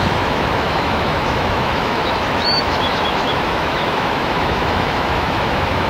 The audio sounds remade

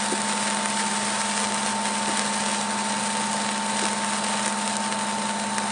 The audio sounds recorded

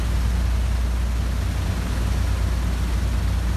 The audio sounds recorded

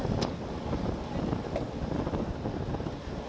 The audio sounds recorded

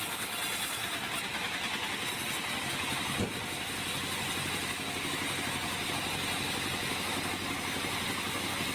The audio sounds recorded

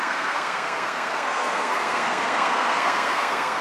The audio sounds remade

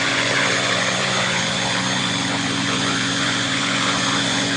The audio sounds remade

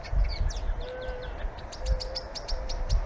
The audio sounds recorded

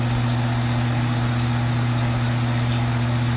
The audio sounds recorded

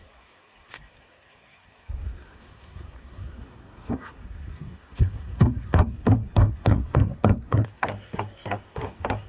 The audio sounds remade